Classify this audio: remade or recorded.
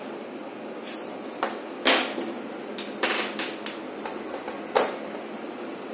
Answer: recorded